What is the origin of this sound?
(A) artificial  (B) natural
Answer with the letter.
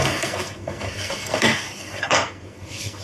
A